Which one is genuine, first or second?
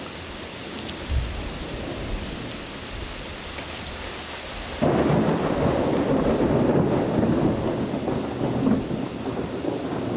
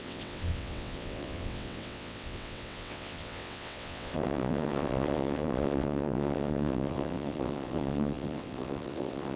first